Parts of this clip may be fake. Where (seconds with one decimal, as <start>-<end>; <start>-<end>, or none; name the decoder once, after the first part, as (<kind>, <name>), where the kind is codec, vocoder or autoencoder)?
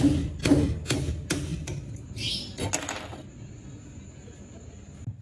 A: none